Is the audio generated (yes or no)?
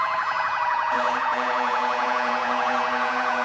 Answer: yes